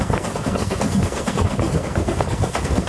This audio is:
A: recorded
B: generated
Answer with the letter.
B